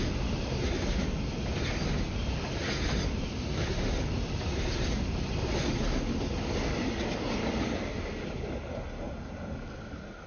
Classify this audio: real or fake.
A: real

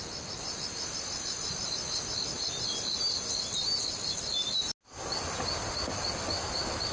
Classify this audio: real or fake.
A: real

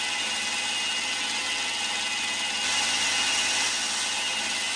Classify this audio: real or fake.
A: real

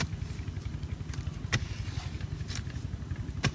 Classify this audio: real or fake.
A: real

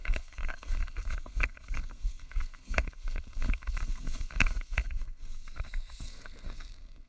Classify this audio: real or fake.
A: fake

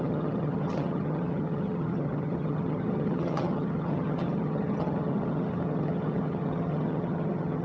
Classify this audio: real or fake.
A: fake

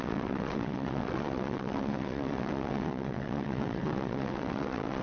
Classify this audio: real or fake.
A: fake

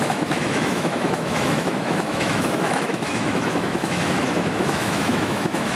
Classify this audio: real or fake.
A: fake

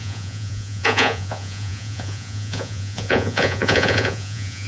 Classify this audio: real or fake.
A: fake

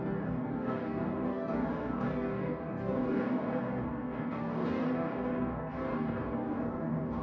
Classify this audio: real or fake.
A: fake